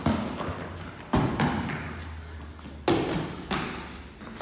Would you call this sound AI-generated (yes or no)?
no